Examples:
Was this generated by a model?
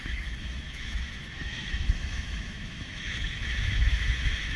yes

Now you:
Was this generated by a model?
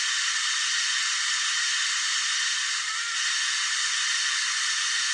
no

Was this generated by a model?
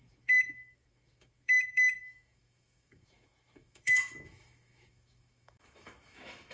yes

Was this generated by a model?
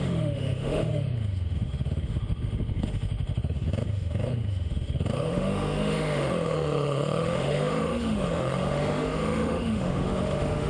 yes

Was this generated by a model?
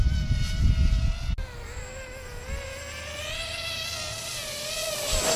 no